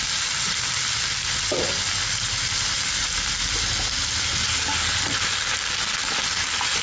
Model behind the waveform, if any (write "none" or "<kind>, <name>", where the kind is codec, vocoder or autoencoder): none